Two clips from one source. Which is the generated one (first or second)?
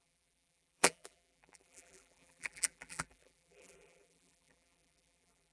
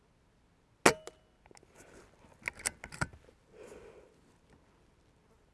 first